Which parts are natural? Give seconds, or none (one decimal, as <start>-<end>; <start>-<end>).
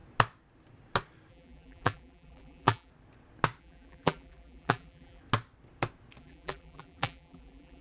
0.0-1.3; 2.9-3.6; 5.2-6.2